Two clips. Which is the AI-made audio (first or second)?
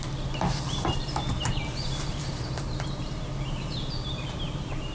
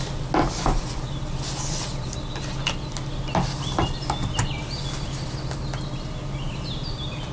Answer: first